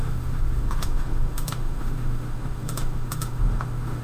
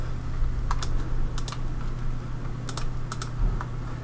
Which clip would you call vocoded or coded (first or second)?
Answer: first